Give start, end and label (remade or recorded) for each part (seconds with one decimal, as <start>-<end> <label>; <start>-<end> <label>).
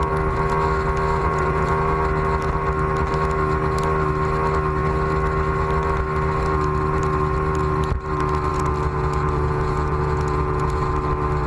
0.0-1.2 recorded; 1.2-1.7 remade; 1.7-8.5 recorded; 8.5-10.9 remade; 10.9-11.5 recorded